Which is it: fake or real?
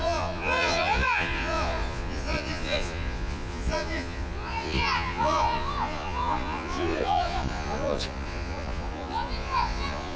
fake